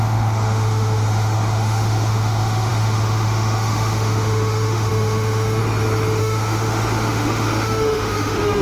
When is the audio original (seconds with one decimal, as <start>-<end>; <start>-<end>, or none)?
5.6-6.2